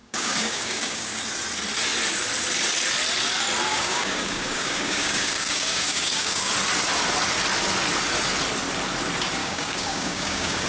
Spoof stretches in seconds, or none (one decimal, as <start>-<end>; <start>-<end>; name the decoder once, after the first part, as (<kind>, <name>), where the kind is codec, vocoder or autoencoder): 0.0-1.2 (codec, DAC); 3.7-6.5; 9.4-10.7